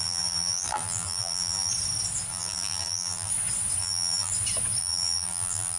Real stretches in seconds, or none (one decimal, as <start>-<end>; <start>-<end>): 1.7-2.3; 3.3-3.8; 4.3-4.8